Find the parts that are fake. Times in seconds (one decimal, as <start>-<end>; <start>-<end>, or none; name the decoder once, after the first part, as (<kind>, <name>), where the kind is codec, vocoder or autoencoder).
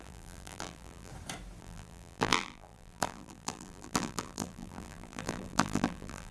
0.0-1.1 (vocoder, BigVGAN v2); 1.6-6.3